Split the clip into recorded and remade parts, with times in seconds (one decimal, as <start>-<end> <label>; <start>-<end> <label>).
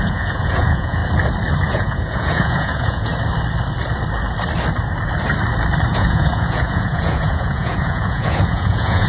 0.0-1.0 remade; 1.0-1.7 recorded; 1.7-3.1 remade; 3.1-5.9 recorded; 5.9-9.1 remade